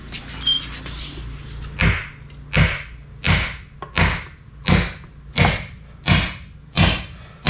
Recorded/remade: recorded